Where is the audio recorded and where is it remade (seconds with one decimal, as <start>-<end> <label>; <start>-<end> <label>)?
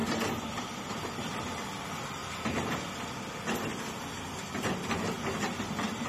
0.0-0.9 recorded; 0.9-2.2 remade; 2.2-5.6 recorded; 5.6-6.1 remade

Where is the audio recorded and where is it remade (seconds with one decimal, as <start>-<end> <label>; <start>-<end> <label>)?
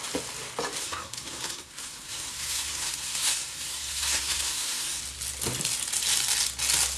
0.0-0.8 recorded; 0.8-5.0 remade; 5.0-7.0 recorded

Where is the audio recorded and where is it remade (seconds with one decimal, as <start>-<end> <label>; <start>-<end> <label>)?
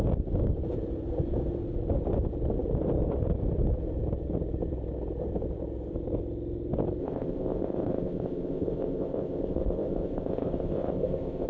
0.0-7.0 recorded; 7.0-11.5 remade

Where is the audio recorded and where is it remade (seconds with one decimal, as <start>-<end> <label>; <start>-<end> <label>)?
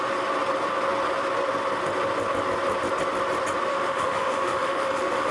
0.0-3.7 recorded; 3.7-5.3 remade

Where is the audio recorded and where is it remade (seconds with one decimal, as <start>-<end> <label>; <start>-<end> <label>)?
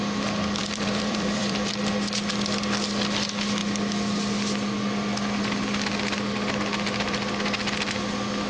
0.0-0.6 recorded; 0.6-1.9 remade; 1.9-8.5 recorded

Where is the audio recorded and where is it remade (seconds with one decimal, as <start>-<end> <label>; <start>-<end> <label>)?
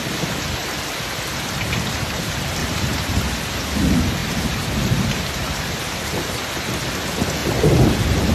0.0-2.6 recorded; 2.6-3.1 remade; 3.1-4.2 recorded; 4.2-6.7 remade; 6.7-7.4 recorded; 7.4-8.3 remade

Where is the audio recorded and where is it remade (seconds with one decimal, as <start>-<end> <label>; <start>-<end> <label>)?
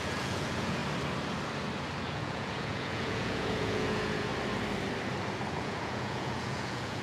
0.0-0.8 remade; 0.8-2.0 recorded; 2.0-4.3 remade; 4.3-5.5 recorded; 5.5-7.0 remade